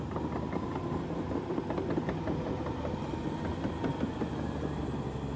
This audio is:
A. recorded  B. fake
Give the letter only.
A